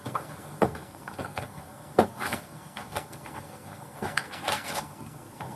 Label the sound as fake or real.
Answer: fake